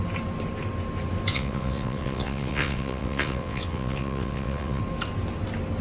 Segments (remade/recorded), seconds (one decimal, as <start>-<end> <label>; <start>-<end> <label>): 0.0-1.3 recorded; 1.3-4.8 remade; 4.8-5.8 recorded